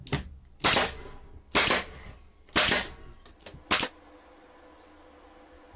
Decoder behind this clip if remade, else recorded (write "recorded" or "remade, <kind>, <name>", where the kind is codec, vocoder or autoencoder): recorded